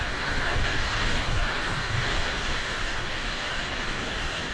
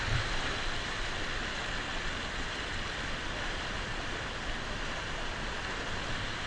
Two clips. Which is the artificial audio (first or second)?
first